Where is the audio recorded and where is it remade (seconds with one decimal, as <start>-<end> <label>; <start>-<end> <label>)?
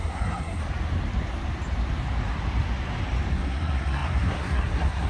0.0-0.6 remade; 0.6-3.3 recorded; 3.3-5.1 remade